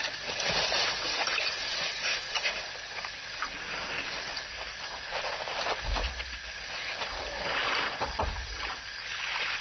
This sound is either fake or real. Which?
real